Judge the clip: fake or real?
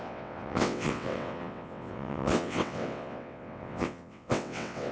fake